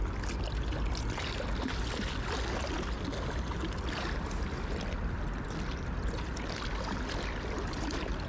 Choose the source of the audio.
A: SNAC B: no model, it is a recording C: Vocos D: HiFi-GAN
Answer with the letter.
B